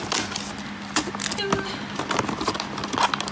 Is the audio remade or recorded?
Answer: recorded